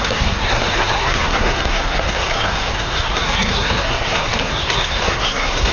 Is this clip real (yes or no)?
no